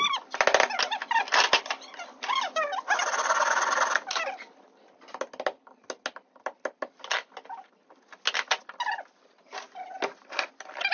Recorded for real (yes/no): yes